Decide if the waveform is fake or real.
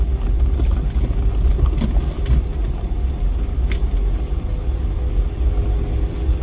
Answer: real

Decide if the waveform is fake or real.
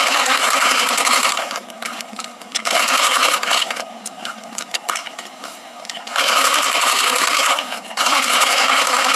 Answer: fake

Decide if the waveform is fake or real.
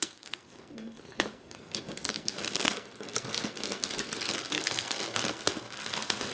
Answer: fake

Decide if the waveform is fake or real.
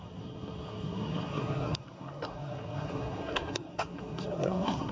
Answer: fake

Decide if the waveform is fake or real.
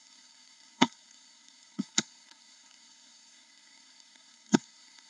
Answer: fake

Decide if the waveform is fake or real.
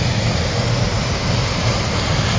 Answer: real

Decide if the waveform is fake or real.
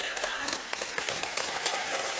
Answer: fake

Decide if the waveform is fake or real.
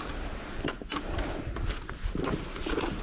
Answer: real